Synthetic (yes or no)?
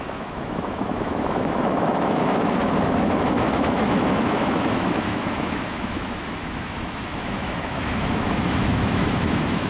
yes